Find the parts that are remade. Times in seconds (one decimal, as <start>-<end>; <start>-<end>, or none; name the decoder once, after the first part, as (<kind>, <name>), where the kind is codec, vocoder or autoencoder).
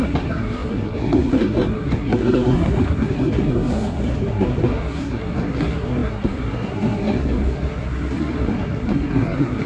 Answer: 0.0-9.7 (codec, SNAC)